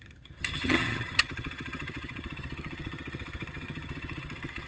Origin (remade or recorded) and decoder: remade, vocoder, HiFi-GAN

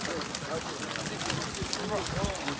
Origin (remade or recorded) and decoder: recorded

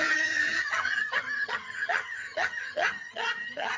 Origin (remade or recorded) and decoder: remade, vocoder, HiFi-GAN